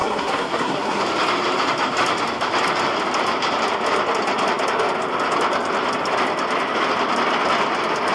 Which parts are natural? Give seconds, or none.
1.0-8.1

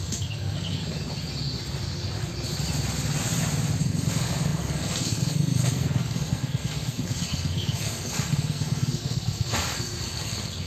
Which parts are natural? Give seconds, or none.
0.8-3.8

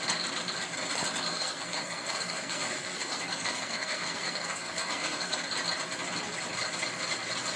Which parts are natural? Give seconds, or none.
0.0-1.3; 5.5-7.6